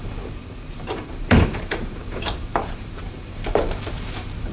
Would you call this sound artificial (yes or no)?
yes